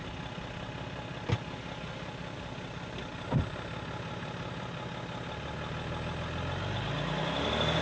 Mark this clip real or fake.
real